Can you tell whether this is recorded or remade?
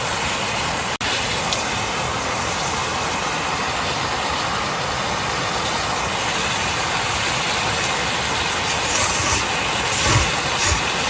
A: recorded